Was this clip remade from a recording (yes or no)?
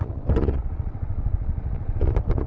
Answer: yes